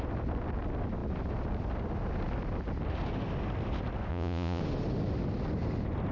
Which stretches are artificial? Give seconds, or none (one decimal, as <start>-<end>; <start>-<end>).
4.1-4.6